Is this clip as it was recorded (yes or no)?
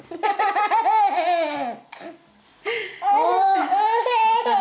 yes